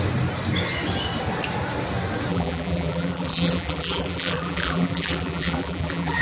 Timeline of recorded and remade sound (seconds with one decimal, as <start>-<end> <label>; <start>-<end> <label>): 0.0-2.3 recorded; 2.3-6.2 remade